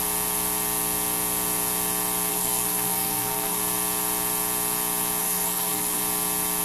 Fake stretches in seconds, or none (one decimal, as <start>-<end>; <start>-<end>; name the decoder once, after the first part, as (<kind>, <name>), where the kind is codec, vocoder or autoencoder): 2.3-3.6 (codec, SNAC); 5.2-6.0